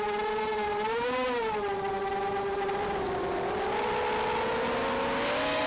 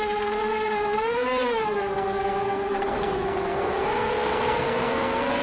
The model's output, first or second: second